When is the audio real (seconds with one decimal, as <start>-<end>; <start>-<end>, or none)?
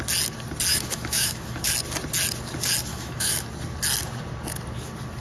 0.0-0.7; 1.7-2.9; 3.4-5.2